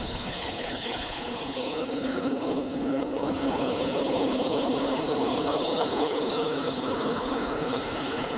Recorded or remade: remade